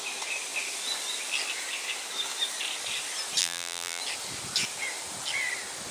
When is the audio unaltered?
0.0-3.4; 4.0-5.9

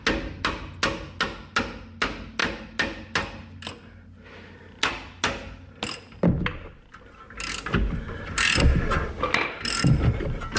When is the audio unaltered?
0.0-10.6

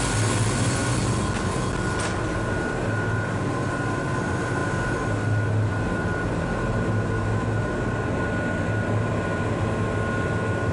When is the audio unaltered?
0.0-10.7

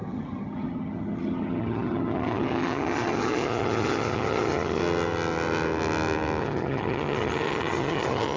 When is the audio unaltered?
4.8-6.4

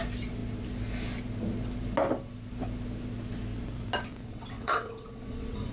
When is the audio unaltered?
0.0-4.3